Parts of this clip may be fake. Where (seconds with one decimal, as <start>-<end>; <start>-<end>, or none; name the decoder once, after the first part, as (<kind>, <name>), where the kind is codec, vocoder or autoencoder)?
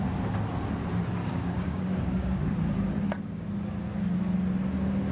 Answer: 1.2-2.5 (codec, DAC)